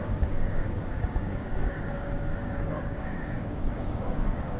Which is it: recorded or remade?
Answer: remade